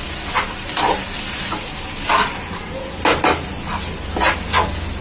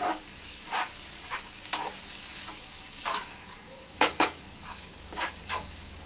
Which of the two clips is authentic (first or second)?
first